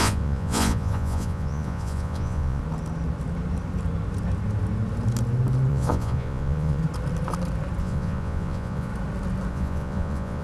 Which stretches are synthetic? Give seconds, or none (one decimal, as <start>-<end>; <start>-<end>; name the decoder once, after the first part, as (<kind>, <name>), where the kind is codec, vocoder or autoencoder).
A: 0.0-2.6 (vocoder, Vocos); 5.7-6.8; 7.8-8.9; 9.5-10.4